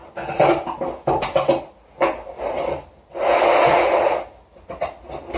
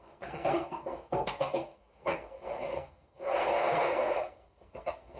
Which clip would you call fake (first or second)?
second